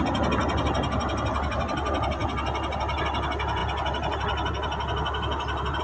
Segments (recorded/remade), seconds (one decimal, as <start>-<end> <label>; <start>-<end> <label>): 0.0-5.8 recorded